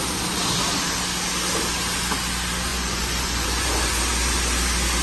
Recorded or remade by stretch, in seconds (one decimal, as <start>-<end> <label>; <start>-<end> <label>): 0.0-2.7 recorded; 2.7-4.0 remade; 4.0-5.0 recorded